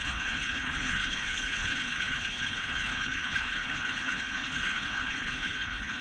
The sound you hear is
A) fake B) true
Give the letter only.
A